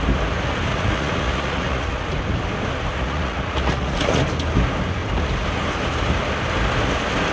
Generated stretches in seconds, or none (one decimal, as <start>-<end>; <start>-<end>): 0.7-2.1; 2.9-4.2